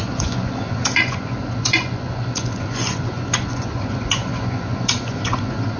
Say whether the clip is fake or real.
fake